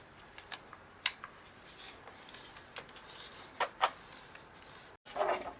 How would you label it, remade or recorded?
recorded